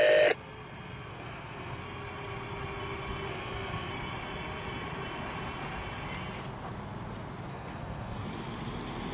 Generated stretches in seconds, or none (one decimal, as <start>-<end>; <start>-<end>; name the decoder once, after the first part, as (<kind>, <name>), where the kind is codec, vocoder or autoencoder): 1.1-1.8 (codec, SNAC); 3.3-3.9; 7.5-8.2